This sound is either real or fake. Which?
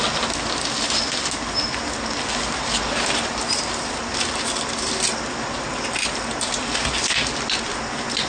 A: real